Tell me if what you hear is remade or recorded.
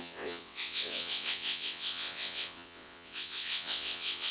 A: remade